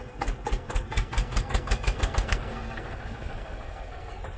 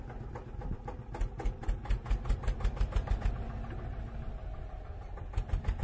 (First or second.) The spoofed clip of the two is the first